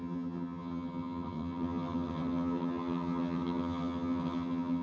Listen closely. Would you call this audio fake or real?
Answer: fake